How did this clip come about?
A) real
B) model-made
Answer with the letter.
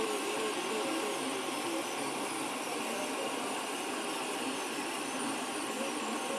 A